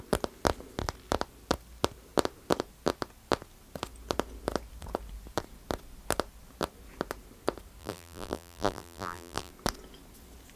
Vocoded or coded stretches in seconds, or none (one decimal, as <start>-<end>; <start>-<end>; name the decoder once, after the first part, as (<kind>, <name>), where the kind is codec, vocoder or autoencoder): 7.8-9.5 (vocoder, BigVGAN v2)